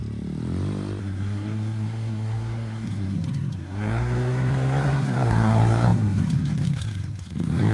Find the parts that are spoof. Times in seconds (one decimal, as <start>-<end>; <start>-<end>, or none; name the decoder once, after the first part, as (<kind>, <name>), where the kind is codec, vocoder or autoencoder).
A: 1.0-7.7 (codec, SNAC)

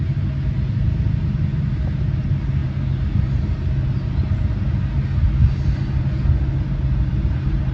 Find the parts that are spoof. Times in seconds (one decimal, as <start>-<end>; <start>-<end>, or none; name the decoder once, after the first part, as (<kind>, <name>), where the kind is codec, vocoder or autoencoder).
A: none

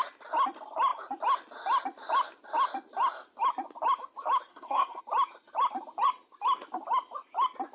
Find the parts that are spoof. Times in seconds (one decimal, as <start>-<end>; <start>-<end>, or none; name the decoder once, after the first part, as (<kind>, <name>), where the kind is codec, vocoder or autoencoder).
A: 4.5-5.0 (codec, SNAC)

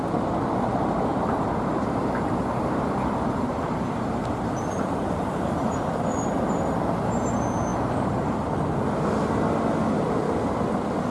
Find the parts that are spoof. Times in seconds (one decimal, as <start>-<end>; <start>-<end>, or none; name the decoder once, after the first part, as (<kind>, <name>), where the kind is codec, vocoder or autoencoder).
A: 1.1-5.7 (vocoder, BigVGAN v2); 7.7-8.3

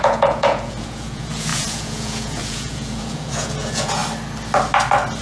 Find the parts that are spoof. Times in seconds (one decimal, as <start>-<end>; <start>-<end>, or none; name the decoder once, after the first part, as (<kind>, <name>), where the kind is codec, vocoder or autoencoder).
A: 0.0-4.0 (vocoder, Vocos)

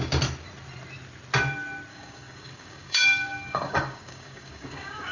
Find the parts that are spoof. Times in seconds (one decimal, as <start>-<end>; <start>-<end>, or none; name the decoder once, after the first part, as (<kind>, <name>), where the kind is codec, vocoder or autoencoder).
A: 1.9-5.1 (codec, DAC)